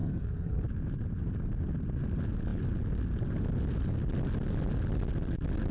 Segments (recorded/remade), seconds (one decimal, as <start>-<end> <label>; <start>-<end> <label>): 0.0-0.6 remade; 0.6-5.7 recorded